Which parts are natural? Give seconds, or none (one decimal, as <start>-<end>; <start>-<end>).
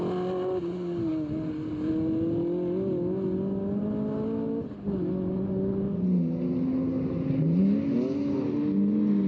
0.0-9.3